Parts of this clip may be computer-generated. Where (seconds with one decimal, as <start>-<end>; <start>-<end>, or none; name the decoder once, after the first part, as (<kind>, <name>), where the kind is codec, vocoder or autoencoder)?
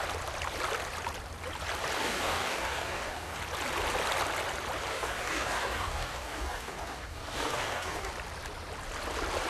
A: 2.0-3.4 (codec, DAC); 4.9-8.1